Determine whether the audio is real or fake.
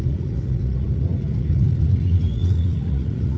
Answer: fake